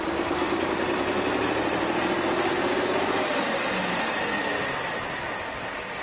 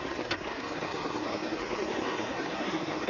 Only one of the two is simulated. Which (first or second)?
second